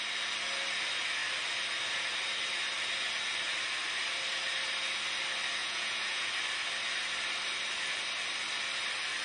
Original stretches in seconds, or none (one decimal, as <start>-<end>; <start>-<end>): 0.0-5.6; 6.2-9.2